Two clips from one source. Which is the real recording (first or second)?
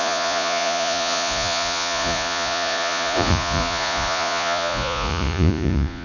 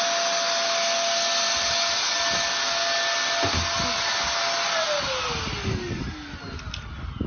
second